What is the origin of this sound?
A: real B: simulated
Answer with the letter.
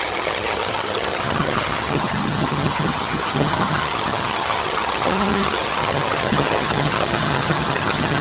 B